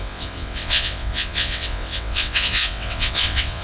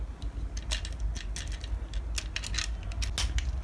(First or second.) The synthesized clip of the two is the first